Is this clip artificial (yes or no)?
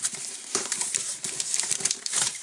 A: yes